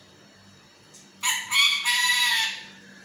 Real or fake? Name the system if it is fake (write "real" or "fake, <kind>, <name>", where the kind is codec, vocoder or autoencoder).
fake, vocoder, BigVGAN v2